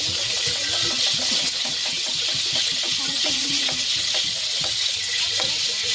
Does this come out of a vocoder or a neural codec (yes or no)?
yes